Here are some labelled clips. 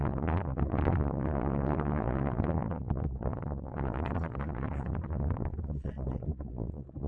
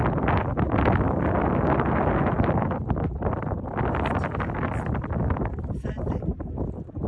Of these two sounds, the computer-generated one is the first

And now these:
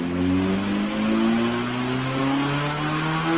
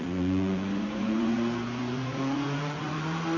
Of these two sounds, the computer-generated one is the second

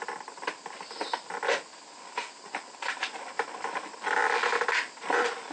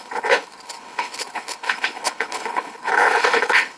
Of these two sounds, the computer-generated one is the second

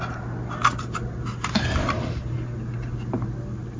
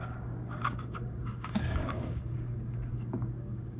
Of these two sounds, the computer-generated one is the second